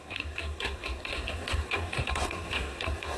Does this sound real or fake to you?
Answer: fake